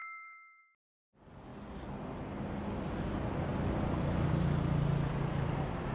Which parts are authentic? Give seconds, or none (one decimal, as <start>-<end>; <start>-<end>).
0.0-5.9